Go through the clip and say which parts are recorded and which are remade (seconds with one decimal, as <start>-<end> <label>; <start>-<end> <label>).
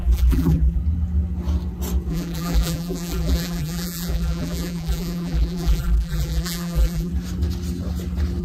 0.0-0.8 remade; 0.8-2.1 recorded; 2.1-7.1 remade; 7.1-8.4 recorded